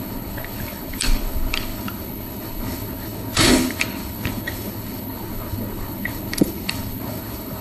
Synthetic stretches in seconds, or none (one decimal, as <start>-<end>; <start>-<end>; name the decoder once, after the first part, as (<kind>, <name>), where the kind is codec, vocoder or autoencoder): 0.0-7.6 (codec, HILCodec)

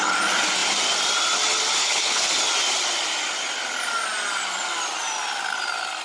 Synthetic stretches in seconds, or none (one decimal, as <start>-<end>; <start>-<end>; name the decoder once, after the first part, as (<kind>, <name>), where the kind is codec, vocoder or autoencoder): 1.8-2.3 (codec, HILCodec)

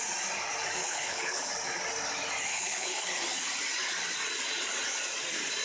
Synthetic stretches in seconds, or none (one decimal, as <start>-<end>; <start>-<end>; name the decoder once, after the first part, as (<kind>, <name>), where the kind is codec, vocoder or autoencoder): 0.8-1.5 (codec, HILCodec); 2.5-3.2

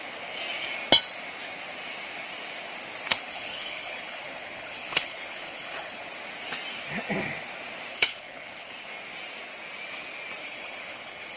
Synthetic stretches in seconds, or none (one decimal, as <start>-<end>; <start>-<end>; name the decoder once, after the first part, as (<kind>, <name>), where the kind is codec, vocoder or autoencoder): 3.1-6.1 (codec, HILCodec); 7.9-8.7; 10.4-11.4

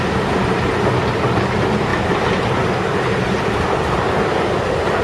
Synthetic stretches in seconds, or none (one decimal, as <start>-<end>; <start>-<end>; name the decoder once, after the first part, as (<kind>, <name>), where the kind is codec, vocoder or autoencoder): none